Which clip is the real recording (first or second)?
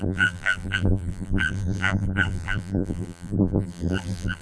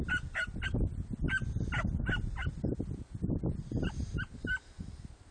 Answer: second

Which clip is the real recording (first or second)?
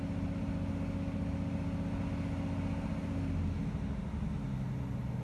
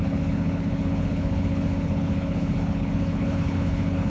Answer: first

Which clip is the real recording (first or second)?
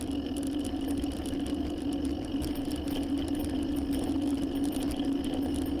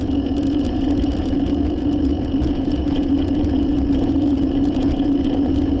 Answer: first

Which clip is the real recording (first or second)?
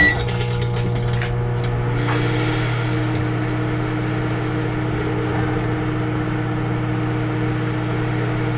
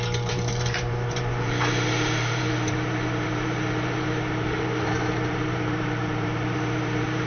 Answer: first